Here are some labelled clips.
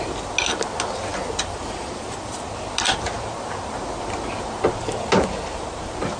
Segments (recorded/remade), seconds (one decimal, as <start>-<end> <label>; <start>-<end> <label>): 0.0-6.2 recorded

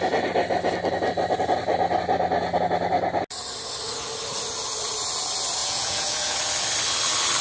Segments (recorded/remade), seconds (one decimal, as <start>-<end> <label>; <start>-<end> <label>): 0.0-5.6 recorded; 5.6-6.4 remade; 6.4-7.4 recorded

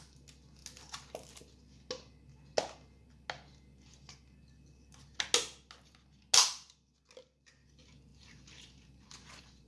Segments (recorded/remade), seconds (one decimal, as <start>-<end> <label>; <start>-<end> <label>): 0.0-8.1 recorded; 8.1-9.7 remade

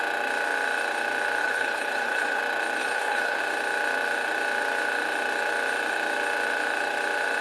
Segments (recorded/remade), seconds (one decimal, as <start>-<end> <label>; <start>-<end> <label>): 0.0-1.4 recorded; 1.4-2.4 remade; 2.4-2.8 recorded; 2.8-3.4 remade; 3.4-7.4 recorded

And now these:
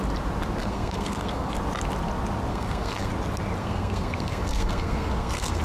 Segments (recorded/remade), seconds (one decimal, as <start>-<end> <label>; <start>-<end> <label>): 0.0-0.6 recorded; 0.6-1.5 remade; 1.5-2.5 recorded; 2.5-3.1 remade; 3.1-3.6 recorded; 3.6-5.6 remade

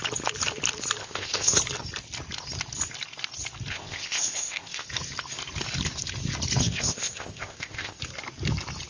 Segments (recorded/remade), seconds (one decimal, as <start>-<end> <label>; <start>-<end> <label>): 0.0-1.0 recorded; 1.0-1.6 remade; 1.6-3.7 recorded; 3.7-4.9 remade; 4.9-6.6 recorded; 6.6-8.0 remade; 8.0-8.9 recorded